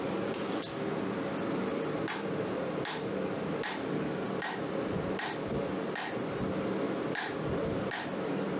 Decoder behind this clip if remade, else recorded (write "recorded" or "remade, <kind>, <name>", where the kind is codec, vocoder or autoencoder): remade, vocoder, BigVGAN v2